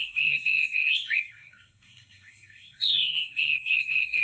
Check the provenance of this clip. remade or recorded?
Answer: remade